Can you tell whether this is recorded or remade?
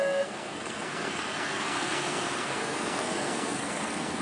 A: remade